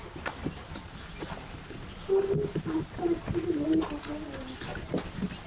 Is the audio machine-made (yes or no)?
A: no